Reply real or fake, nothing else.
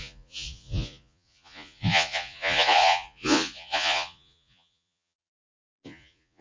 fake